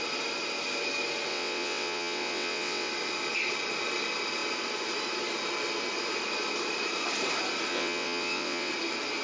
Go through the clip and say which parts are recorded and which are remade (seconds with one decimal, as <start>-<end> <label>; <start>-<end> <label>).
0.0-1.3 recorded; 1.3-2.9 remade; 2.9-7.7 recorded; 7.7-8.7 remade; 8.7-9.2 recorded